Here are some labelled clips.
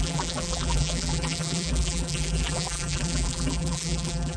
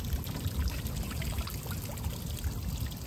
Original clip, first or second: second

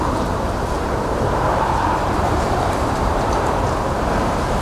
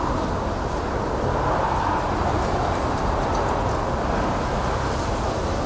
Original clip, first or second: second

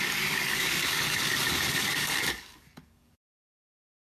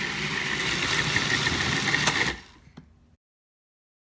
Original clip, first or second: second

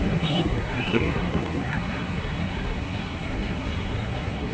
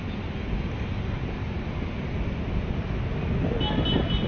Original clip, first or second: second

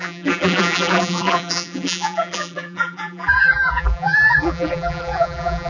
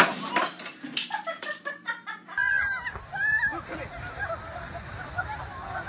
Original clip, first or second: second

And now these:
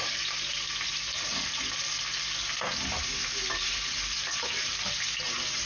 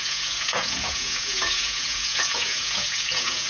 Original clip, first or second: first